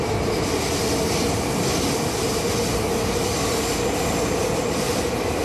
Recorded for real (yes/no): yes